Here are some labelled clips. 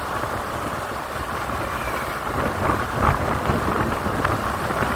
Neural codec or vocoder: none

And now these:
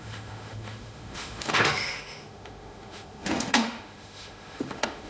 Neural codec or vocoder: autoencoder, DAC-VAE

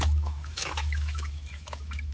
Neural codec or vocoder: autoencoder, DAC-VAE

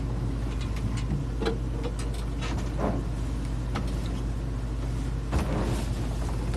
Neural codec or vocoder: none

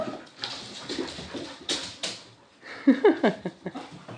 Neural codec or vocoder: none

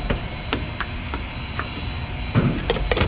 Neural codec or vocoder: vocoder, BigVGAN v2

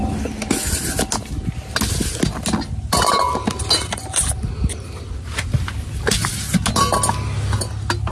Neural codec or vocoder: none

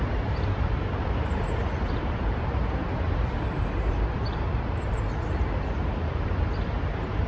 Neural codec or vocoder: vocoder, BigVGAN v2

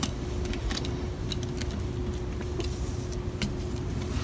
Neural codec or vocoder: none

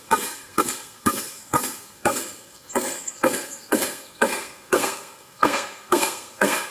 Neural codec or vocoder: codec, SNAC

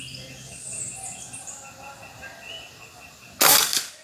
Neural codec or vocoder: none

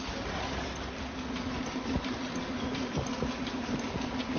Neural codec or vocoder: none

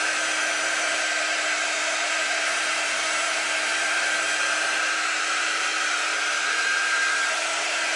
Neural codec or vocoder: vocoder, BigVGAN v2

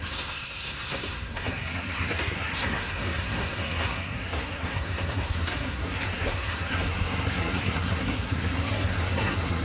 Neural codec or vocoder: codec, SNAC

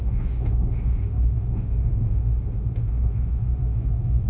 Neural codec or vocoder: autoencoder, DAC-VAE